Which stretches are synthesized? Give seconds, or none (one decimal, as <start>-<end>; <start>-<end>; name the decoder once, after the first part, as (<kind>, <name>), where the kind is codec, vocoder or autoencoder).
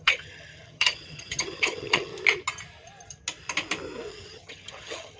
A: 0.0-2.1 (vocoder, HiFi-GAN); 4.1-5.2